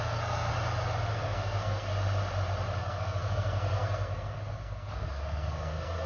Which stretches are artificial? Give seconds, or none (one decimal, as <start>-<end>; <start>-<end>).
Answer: 0.0-0.5; 1.1-1.9; 2.8-6.1